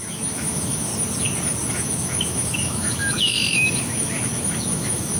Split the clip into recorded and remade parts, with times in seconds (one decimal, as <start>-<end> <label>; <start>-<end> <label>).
0.0-0.9 remade; 0.9-1.7 recorded; 1.7-5.2 remade